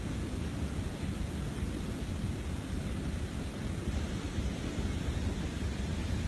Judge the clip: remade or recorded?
recorded